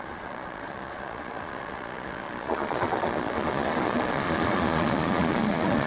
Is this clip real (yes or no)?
no